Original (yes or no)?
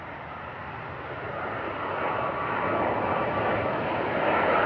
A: yes